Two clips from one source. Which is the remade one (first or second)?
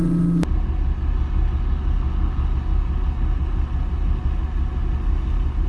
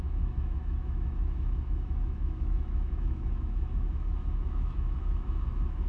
second